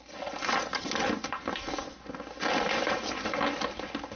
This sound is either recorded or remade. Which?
recorded